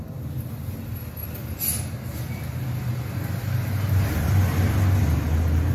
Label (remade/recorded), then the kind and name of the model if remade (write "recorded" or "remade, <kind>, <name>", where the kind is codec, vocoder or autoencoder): recorded